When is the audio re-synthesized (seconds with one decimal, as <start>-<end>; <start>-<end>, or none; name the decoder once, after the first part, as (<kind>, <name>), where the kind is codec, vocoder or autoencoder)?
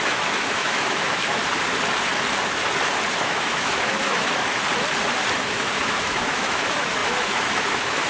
0.0-1.4 (autoencoder, DAC-VAE); 3.2-4.4; 5.3-8.1